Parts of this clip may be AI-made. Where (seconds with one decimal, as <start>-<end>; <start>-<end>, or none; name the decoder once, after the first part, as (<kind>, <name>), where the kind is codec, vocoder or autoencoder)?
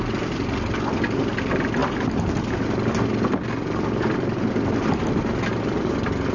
none